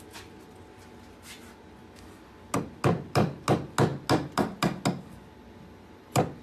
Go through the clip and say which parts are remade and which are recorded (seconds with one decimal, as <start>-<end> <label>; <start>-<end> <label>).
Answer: 0.0-6.4 recorded